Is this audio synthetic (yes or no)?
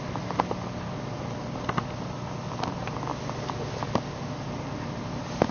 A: no